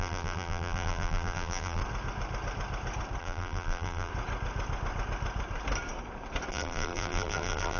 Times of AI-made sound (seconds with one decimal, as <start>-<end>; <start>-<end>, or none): 0.0-1.8; 3.2-4.1; 6.5-7.8